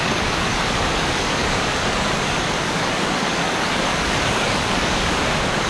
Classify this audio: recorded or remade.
remade